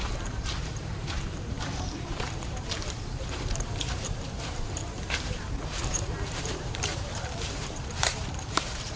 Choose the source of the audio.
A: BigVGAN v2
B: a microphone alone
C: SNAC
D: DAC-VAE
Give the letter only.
A